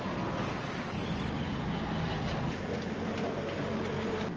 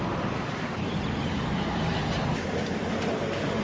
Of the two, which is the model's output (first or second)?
second